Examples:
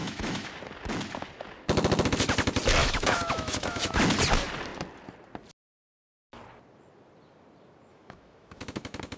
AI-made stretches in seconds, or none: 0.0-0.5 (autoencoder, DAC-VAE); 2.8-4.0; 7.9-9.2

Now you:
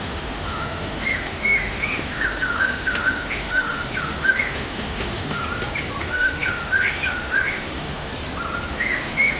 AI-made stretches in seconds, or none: 0.0-5.4 (autoencoder, DAC-VAE); 6.0-8.1; 8.7-9.4

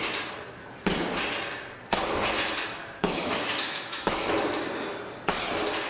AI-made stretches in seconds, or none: 2.8-4.3 (autoencoder, DAC-VAE)

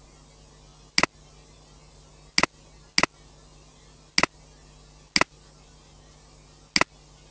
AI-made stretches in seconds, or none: none

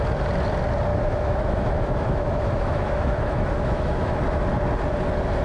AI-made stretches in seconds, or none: 0.9-4.1 (autoencoder, DAC-VAE)